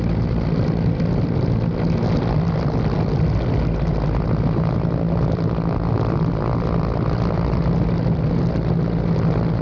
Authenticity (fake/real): real